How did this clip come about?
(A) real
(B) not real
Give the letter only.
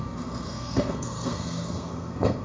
B